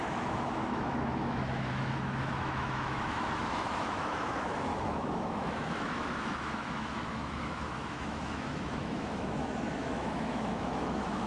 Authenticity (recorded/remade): remade